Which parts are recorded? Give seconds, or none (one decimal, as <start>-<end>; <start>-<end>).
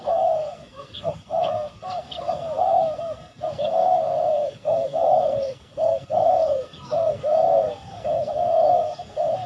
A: none